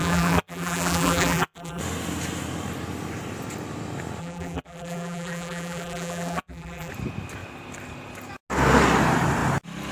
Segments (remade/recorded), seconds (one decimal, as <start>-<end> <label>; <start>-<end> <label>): 0.0-1.8 remade; 1.8-4.2 recorded; 4.2-6.9 remade; 6.9-9.9 recorded